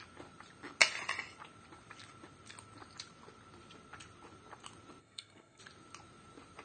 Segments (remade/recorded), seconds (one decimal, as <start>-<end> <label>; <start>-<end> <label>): 0.0-5.0 recorded; 5.0-5.6 remade; 5.6-6.6 recorded